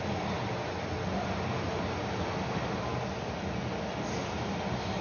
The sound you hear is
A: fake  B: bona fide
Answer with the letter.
B